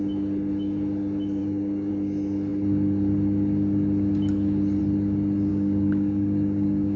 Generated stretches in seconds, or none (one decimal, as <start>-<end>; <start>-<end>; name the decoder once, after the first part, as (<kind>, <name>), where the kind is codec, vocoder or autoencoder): 1.4-1.9 (codec, DAC); 5.5-7.0